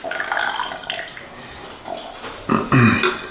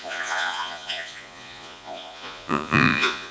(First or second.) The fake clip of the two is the second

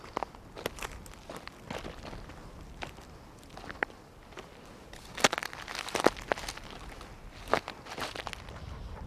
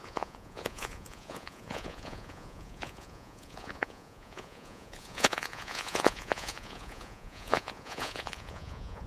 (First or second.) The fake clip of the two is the second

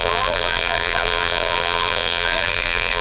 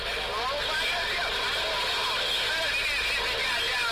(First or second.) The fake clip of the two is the first